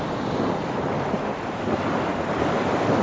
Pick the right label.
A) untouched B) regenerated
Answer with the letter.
A